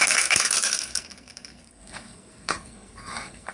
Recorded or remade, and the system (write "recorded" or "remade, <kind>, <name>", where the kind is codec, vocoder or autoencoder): remade, codec, SNAC